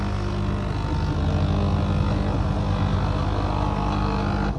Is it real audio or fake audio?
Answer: real